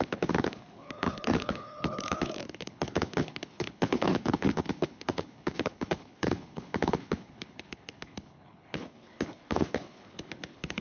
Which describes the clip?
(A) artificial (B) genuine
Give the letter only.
A